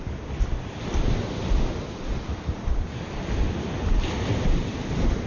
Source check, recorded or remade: recorded